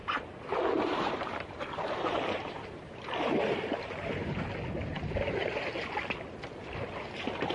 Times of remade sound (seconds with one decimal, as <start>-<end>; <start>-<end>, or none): 0.0-4.4; 4.9-5.5